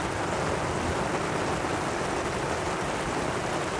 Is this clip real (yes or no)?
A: yes